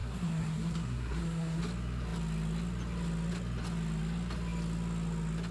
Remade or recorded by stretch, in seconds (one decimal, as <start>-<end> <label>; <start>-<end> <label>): 0.0-1.6 remade; 1.6-5.5 recorded